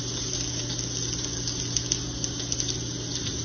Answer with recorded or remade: recorded